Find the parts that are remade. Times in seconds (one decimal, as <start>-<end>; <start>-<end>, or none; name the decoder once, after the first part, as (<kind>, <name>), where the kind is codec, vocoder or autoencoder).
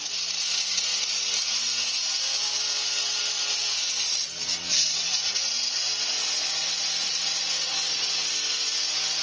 4.1-5.3 (vocoder, Vocos); 6.2-8.3